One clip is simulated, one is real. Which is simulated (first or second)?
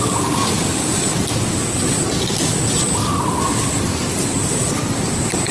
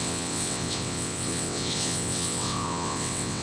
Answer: second